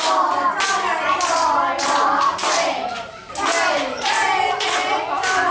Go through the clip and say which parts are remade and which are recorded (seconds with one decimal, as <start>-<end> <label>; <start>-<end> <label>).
0.0-5.5 recorded